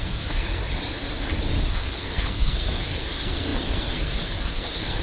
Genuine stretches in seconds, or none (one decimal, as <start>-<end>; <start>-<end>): 0.6-1.7